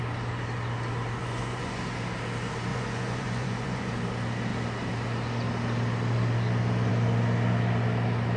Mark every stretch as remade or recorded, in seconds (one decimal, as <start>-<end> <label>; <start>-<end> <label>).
0.0-1.2 recorded; 1.2-1.8 remade; 1.8-2.7 recorded; 2.7-3.9 remade; 3.9-8.4 recorded